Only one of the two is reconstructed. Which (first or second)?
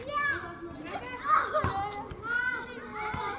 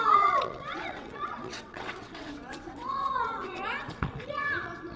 second